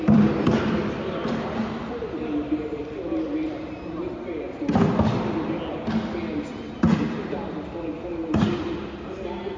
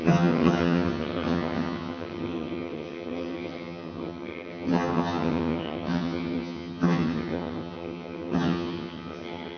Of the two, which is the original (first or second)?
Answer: first